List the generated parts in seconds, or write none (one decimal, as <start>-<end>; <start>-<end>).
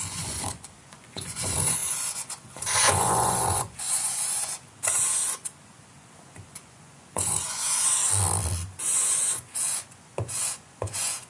0.0-7.9; 8.8-11.3